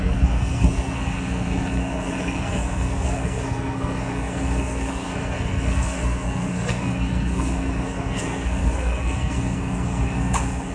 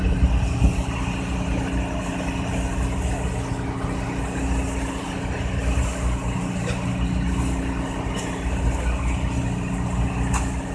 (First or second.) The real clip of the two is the second